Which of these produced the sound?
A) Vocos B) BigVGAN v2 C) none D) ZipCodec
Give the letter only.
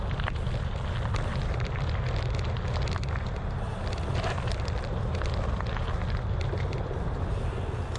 C